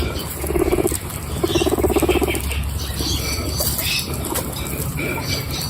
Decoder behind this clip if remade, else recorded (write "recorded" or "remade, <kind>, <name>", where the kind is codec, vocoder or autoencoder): recorded